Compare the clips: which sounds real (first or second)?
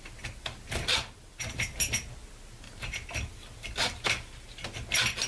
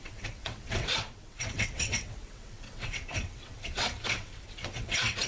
first